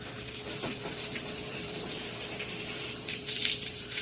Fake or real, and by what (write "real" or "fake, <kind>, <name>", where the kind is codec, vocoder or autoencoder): fake, vocoder, BigVGAN v2